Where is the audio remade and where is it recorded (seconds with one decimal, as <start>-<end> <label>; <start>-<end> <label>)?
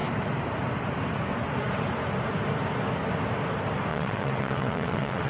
0.0-3.9 recorded; 3.9-5.3 remade